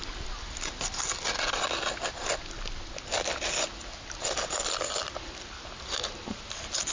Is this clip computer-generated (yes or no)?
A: no